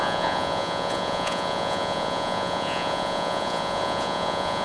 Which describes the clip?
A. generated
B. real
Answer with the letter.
A